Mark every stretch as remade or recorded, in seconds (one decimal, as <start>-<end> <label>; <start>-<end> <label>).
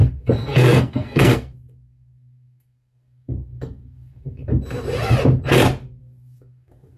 0.0-4.5 remade; 4.5-6.0 recorded; 6.0-7.0 remade